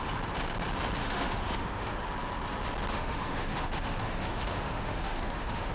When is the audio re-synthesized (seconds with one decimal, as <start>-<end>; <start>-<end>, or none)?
1.0-2.0; 2.9-5.7